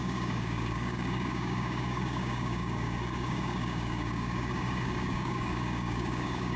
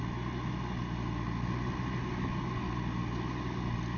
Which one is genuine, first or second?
second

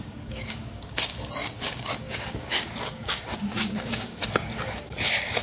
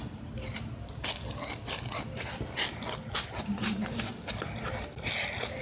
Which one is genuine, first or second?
second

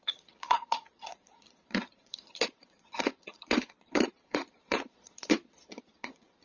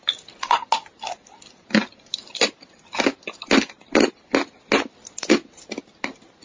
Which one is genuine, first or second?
second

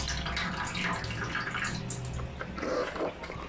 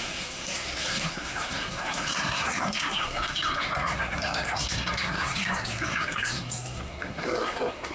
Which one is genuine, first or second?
first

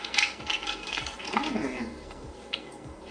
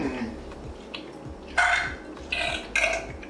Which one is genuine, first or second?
second